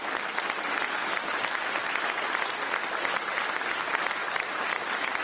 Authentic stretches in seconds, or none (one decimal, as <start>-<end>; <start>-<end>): 0.0-5.2